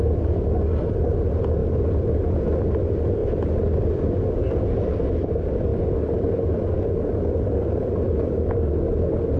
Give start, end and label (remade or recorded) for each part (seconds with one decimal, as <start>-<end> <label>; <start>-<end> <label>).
0.0-9.4 recorded